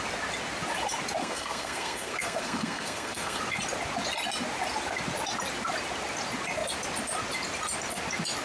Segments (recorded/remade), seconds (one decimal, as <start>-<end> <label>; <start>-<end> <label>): 0.0-1.2 recorded; 1.2-3.4 remade; 3.4-8.4 recorded